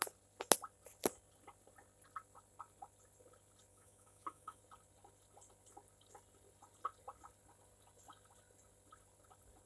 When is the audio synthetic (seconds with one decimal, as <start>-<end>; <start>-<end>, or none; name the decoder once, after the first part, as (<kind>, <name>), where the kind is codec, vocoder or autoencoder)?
3.7-4.6 (autoencoder, DAC-VAE)